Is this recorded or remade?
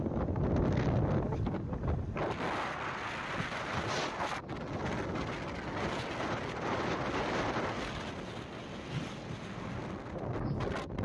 recorded